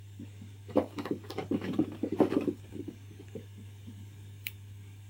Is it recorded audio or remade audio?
remade